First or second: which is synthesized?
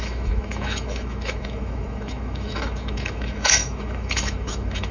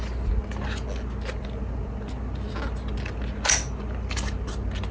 first